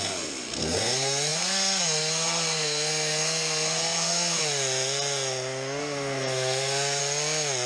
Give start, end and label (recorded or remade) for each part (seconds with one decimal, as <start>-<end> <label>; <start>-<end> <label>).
0.0-4.4 remade; 4.4-5.8 recorded; 5.8-7.0 remade; 7.0-7.7 recorded